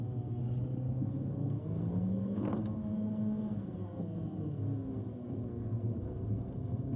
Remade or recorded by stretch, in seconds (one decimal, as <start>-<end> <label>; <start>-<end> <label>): 0.0-0.4 remade; 0.4-1.0 recorded; 1.0-7.0 remade